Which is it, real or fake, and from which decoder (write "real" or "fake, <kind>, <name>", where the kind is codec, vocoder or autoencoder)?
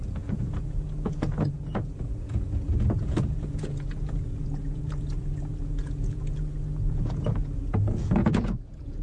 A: fake, vocoder, Vocos